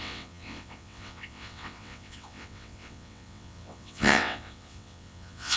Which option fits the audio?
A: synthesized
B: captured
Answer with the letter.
A